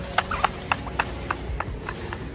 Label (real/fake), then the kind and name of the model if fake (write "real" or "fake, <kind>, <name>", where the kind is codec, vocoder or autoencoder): real